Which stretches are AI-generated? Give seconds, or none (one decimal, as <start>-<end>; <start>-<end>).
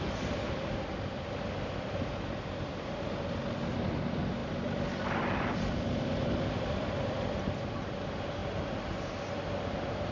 4.4-7.4